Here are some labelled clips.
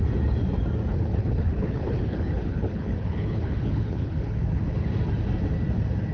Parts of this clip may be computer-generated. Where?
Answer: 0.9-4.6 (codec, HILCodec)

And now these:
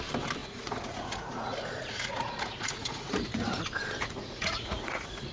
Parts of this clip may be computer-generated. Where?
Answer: 0.4-3.6 (vocoder, Vocos); 4.0-5.3

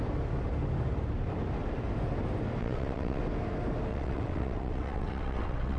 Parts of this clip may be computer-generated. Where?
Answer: 2.6-3.2 (vocoder, WaveNeXt); 3.9-5.8

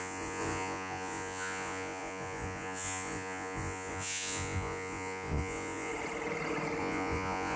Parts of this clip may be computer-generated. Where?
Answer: 0.0-5.9 (vocoder, Vocos); 6.8-7.6

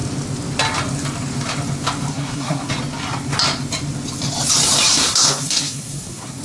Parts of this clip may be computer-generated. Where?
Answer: 2.1-2.7 (codec, SNAC); 4.9-6.4

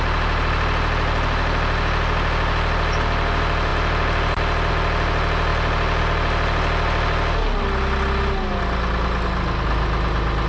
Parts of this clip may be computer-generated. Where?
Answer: none

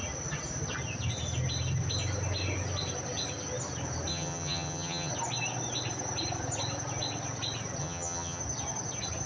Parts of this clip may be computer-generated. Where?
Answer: 4.1-5.1 (vocoder, HiFi-GAN); 7.8-8.4